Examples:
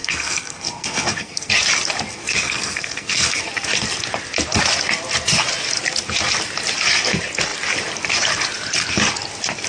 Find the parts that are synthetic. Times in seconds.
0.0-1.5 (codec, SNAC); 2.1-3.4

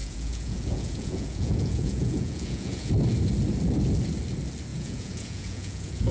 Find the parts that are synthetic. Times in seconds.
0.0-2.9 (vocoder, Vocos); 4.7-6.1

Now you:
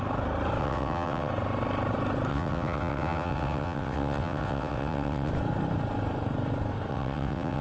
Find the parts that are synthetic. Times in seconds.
0.6-1.3 (vocoder, WaveNeXt); 2.3-5.3; 6.9-7.6

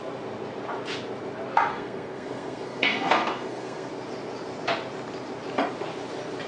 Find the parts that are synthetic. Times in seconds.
1.7-3.9 (codec, SNAC)

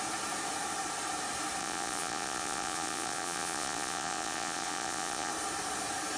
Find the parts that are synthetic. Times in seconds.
1.6-5.3 (vocoder, Vocos)

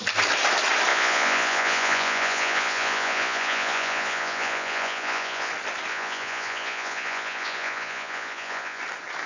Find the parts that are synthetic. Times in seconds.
0.9-5.5 (vocoder, Vocos); 5.9-8.8

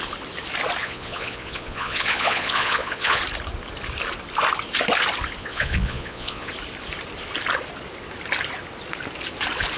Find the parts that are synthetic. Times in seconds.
0.8-3.2 (vocoder, Vocos); 5.4-6.5